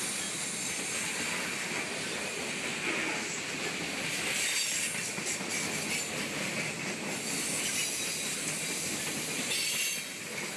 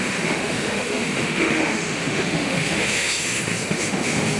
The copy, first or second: second